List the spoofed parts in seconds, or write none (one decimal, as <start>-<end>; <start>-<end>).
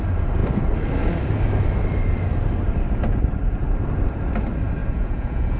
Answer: 4.8-5.6